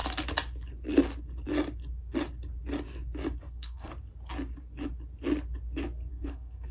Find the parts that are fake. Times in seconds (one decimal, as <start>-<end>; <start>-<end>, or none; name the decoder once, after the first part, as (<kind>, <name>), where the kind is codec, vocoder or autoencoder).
3.4-3.9 (codec, SNAC); 6.1-6.7